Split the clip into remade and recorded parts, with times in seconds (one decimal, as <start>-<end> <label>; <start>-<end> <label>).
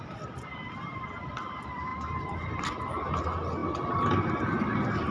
0.0-5.1 recorded